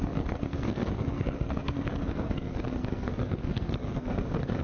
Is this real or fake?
fake